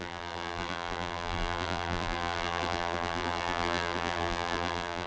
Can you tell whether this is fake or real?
fake